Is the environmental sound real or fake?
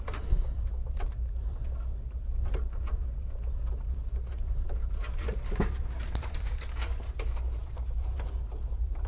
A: fake